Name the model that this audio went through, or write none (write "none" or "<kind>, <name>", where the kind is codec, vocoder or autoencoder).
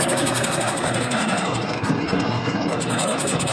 codec, SNAC